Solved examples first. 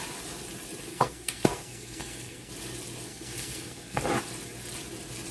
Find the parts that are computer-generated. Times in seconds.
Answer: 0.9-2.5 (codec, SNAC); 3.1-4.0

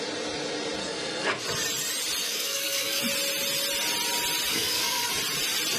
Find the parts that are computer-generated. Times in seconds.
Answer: 0.8-1.4 (codec, SNAC); 2.2-3.0; 4.5-5.1

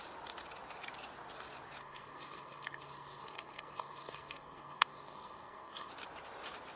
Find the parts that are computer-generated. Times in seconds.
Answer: 1.8-5.9 (codec, SNAC)

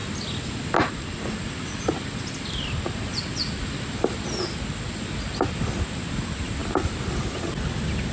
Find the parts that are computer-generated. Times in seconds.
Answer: none

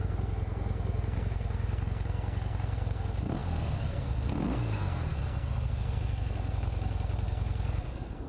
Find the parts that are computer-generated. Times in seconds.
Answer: 0.0-8.3 (codec, SNAC)

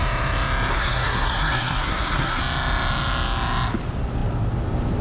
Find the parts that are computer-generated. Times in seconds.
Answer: 0.7-2.4 (codec, SNAC)

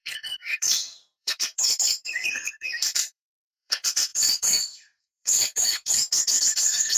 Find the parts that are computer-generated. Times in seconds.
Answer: 0.0-7.0 (codec, SNAC)

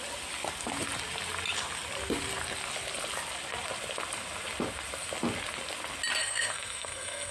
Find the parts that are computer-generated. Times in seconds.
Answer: 6.2-7.3 (codec, SNAC)